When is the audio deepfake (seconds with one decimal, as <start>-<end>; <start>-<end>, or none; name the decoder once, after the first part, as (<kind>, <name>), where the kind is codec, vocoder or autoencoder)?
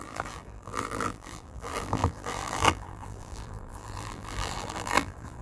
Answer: 0.0-5.4 (vocoder, BigVGAN v2)